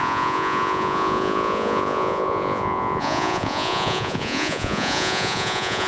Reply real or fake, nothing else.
fake